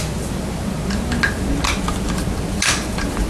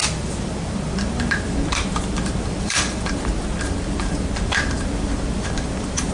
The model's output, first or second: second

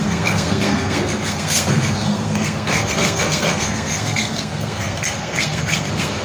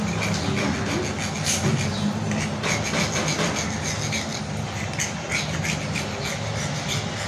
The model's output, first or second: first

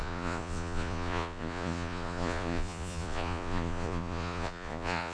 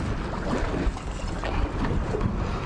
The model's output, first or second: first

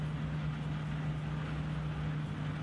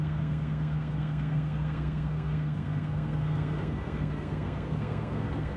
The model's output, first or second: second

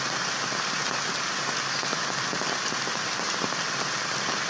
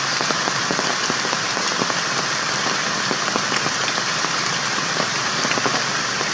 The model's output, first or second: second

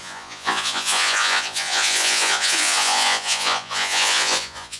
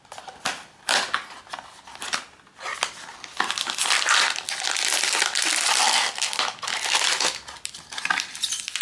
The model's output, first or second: first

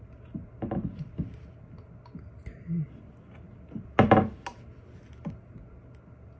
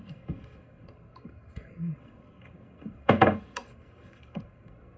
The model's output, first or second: second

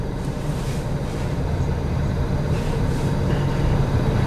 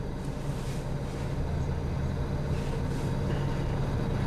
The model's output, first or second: first